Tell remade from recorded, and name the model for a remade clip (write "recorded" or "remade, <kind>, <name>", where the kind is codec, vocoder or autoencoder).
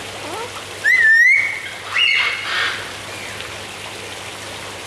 recorded